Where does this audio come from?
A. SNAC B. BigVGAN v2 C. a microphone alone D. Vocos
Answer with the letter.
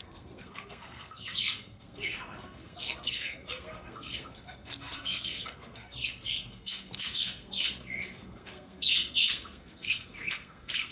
A